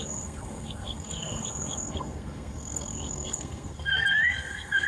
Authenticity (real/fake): fake